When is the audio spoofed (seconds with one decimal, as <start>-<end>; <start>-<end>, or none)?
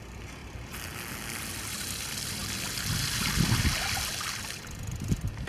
0.0-5.5